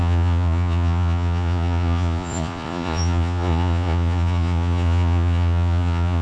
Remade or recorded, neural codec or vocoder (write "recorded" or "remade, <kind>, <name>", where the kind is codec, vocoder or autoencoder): remade, vocoder, Vocos